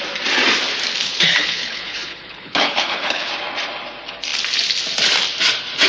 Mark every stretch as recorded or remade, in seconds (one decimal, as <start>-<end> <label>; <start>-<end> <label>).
0.0-1.0 recorded; 1.0-3.3 remade; 3.3-5.9 recorded